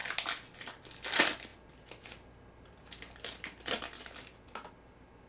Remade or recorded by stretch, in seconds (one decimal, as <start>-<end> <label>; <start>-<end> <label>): 0.0-5.3 recorded

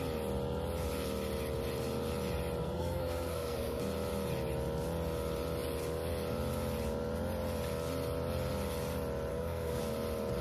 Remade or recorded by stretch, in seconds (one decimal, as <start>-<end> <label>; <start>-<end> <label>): 0.0-2.6 recorded; 2.6-3.8 remade; 3.8-9.3 recorded; 9.3-9.8 remade; 9.8-10.4 recorded

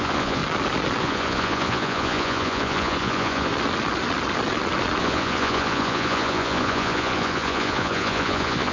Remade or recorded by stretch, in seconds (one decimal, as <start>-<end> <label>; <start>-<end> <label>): 0.0-0.4 remade; 0.4-1.0 recorded; 1.0-3.5 remade; 3.5-5.0 recorded; 5.0-8.7 remade

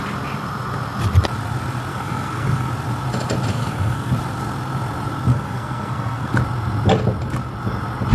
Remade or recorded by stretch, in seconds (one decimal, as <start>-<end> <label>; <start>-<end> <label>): 0.0-1.9 recorded; 1.9-2.7 remade; 2.7-3.5 recorded; 3.5-4.1 remade; 4.1-5.3 recorded; 5.3-6.3 remade; 6.3-8.1 recorded

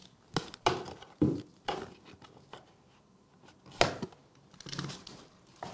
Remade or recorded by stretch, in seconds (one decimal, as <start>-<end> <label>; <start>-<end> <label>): 0.0-5.7 recorded

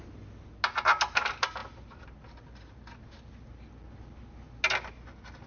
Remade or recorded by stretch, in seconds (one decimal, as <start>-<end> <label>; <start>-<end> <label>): 0.0-5.5 recorded

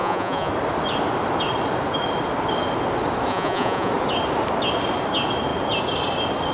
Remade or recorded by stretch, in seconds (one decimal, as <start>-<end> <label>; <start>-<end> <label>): 0.0-0.5 remade; 0.5-3.3 recorded; 3.3-3.9 remade; 3.9-6.5 recorded